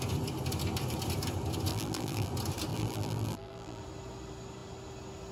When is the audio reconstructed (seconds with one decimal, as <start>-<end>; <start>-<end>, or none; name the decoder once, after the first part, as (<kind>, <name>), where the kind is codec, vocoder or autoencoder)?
1.7-2.3 (vocoder, BigVGAN v2); 2.7-3.8